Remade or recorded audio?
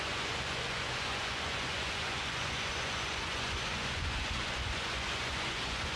remade